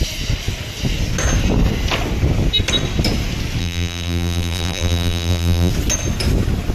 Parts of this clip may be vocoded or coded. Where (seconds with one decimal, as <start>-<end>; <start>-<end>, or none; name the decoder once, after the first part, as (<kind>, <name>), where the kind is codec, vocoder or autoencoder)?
3.6-5.7 (vocoder, BigVGAN v2)